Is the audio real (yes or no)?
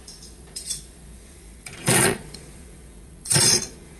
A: no